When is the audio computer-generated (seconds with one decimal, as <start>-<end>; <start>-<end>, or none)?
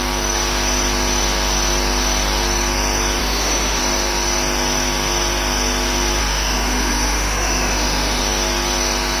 3.2-3.8; 6.2-8.2